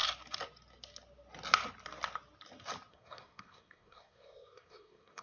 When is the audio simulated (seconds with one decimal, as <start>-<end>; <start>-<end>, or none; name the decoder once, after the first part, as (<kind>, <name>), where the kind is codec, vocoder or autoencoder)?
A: 2.9-5.2 (codec, SNAC)